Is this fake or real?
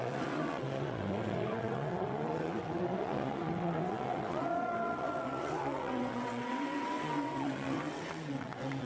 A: fake